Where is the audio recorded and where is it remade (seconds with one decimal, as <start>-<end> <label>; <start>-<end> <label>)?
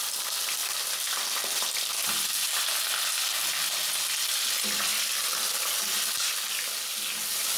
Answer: 0.0-7.6 recorded